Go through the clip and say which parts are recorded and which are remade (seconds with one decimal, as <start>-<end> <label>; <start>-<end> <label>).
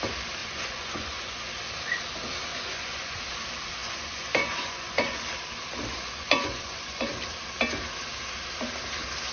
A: 0.0-0.4 recorded; 0.4-1.5 remade; 1.5-2.5 recorded; 2.5-3.2 remade; 3.2-3.8 recorded; 3.8-5.2 remade; 5.2-5.9 recorded; 5.9-7.1 remade; 7.1-9.3 recorded